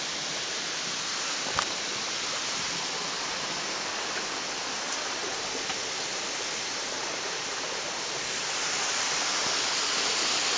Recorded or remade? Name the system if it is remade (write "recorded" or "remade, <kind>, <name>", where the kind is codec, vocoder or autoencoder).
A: recorded